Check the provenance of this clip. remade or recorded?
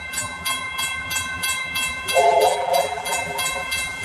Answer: remade